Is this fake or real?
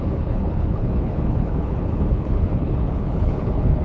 fake